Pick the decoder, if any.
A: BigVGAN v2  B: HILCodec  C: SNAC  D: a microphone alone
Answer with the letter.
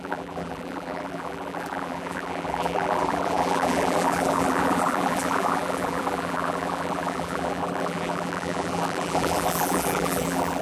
A